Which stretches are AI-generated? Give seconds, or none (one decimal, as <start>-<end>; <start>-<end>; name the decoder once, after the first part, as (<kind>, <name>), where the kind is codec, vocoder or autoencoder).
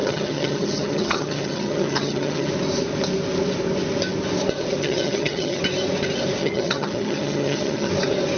0.0-2.5 (vocoder, HiFi-GAN); 4.8-5.6; 6.4-7.9